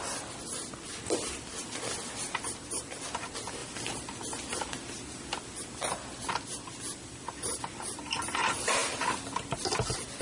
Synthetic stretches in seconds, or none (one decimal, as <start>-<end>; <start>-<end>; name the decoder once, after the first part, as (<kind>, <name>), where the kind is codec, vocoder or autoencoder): none